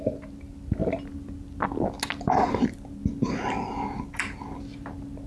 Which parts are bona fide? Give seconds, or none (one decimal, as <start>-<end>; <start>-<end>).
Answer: 0.0-5.3